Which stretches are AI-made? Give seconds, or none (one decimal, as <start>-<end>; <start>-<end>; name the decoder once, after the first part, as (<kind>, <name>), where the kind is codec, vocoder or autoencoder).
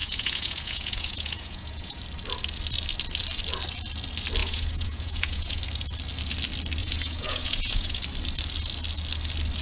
0.0-2.0 (vocoder, Vocos); 4.4-5.6; 6.8-8.0